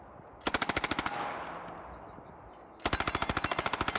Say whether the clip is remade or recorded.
recorded